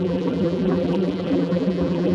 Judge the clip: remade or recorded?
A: remade